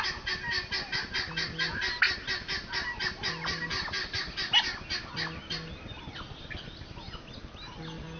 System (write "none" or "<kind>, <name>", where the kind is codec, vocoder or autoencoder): none